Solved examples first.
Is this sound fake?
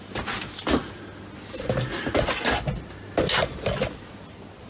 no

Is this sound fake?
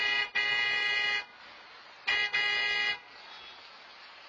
no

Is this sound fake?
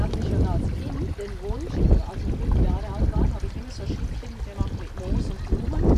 no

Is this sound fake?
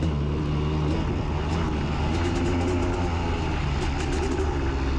no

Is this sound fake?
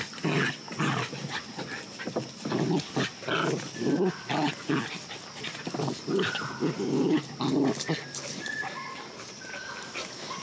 no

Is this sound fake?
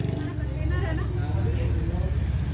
no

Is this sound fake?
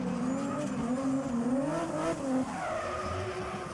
no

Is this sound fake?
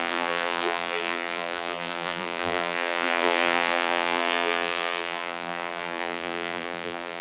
yes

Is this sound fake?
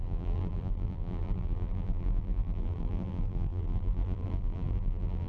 yes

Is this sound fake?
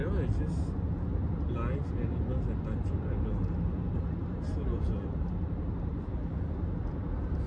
no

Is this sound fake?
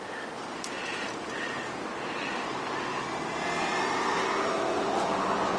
no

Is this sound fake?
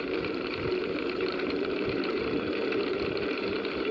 yes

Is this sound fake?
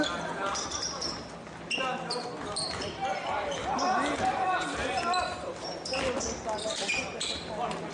no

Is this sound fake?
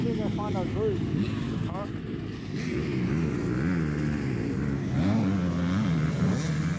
no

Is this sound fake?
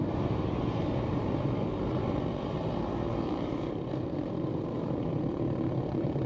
yes